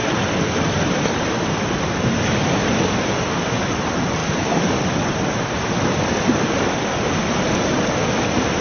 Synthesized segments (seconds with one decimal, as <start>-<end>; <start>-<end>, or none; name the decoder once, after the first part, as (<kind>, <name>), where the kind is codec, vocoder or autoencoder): none